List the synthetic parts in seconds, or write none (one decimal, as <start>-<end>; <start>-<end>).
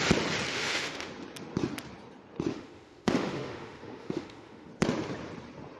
0.5-1.1; 2.5-4.7